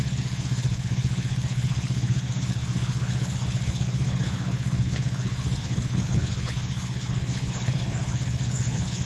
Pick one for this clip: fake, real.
fake